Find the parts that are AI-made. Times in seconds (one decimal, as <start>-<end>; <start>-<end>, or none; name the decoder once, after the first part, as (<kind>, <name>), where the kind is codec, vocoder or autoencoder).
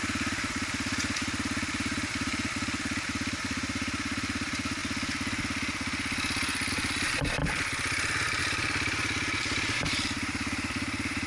0.0-2.3 (vocoder, BigVGAN v2); 3.4-4.8; 6.7-7.4; 8.4-11.3